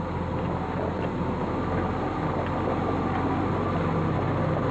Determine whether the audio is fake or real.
real